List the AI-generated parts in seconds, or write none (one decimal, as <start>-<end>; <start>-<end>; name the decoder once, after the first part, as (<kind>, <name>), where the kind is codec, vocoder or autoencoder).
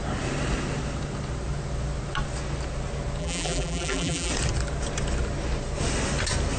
3.2-4.3 (vocoder, BigVGAN v2)